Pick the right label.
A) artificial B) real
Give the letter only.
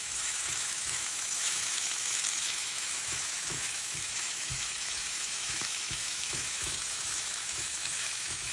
A